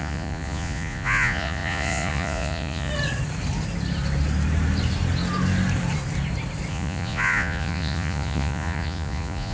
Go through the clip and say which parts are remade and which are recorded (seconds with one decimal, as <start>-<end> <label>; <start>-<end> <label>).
0.0-2.9 remade; 2.9-6.7 recorded; 6.7-9.5 remade